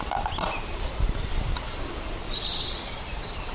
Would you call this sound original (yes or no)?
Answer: yes